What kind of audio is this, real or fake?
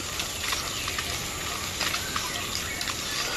real